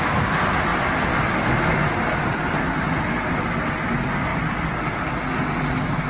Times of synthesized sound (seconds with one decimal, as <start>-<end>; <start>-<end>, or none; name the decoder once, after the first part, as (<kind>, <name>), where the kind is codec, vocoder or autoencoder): none